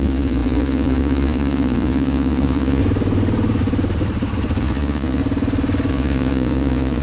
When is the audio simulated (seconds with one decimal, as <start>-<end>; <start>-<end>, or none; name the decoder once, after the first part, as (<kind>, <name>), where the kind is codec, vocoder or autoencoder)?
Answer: 0.0-2.8 (vocoder, Vocos); 4.6-5.2; 5.9-7.0